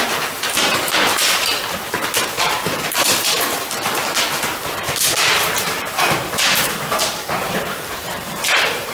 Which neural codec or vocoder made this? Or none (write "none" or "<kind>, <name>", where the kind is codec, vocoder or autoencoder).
vocoder, BigVGAN v2